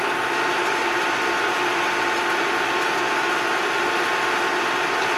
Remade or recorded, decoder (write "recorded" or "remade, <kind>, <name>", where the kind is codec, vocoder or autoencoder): recorded